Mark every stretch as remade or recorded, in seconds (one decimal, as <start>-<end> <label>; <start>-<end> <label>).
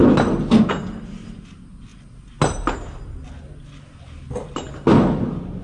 0.0-5.6 recorded